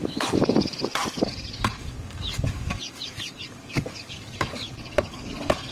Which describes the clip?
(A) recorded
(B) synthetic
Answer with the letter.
B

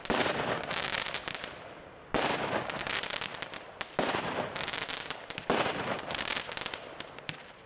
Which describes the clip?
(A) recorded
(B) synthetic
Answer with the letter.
A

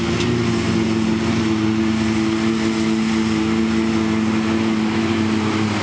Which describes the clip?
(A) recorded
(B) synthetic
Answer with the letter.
A